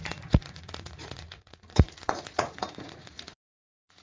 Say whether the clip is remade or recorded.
remade